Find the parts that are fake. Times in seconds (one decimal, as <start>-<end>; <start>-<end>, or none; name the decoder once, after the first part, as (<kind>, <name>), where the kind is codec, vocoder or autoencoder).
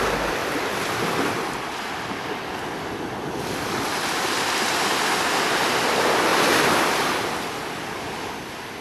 0.4-2.5 (vocoder, BigVGAN v2)